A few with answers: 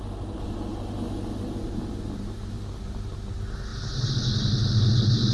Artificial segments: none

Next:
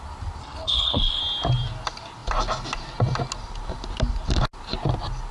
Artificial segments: 0.4-1.2 (codec, HILCodec)